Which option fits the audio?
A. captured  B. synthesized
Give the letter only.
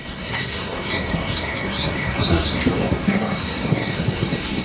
B